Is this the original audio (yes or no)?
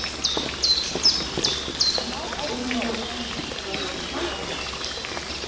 yes